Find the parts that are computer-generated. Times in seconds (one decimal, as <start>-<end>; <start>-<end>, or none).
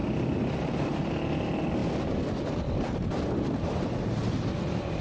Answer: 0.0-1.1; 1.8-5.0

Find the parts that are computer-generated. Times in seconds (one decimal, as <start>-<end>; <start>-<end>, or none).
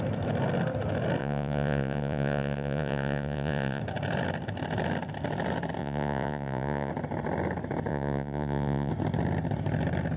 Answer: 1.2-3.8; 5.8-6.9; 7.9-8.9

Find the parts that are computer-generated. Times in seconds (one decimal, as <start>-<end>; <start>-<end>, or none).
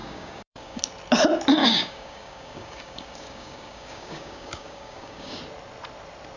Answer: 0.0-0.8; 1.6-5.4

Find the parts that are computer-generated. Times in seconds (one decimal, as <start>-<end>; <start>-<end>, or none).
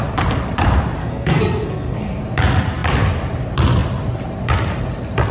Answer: 1.0-2.1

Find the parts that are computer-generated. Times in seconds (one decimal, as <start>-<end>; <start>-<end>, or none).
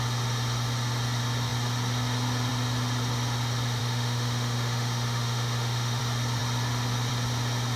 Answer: 3.8-6.0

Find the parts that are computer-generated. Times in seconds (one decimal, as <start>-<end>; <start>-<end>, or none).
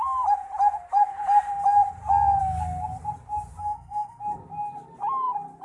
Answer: 3.6-4.2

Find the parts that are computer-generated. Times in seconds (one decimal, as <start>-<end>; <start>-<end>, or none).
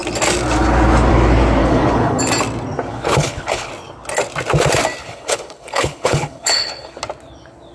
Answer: 1.6-2.2; 2.9-3.7; 5.0-7.0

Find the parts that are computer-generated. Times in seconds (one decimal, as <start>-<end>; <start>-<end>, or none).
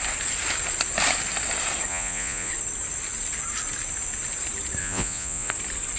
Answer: 1.9-2.5; 4.8-5.5